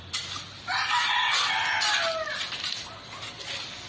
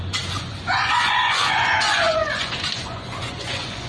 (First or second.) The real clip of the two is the first